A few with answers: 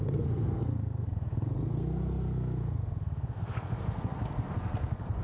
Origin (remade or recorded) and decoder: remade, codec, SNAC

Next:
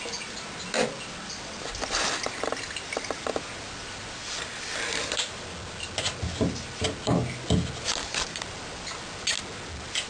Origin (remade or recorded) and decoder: recorded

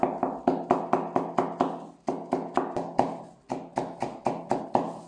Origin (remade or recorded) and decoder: recorded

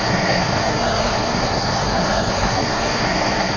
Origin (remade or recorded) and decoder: remade, codec, SNAC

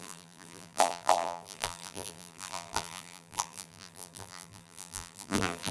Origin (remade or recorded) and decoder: remade, vocoder, BigVGAN v2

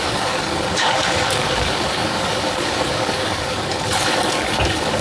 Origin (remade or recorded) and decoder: remade, codec, DAC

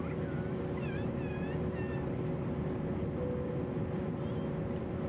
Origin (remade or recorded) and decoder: recorded